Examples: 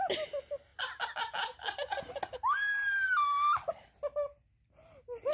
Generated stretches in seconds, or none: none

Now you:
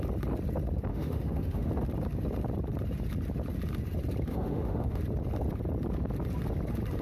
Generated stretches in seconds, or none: 0.9-1.7 (autoencoder, DAC-VAE); 4.3-5.0

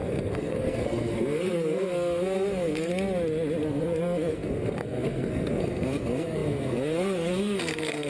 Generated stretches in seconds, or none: 0.0-2.9 (codec, SNAC); 3.6-8.1

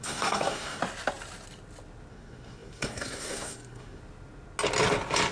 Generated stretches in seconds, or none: 0.0-0.8 (codec, SNAC); 2.1-4.0

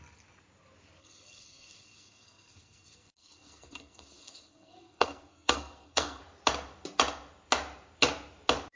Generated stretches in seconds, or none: 1.0-6.2 (codec, SNAC)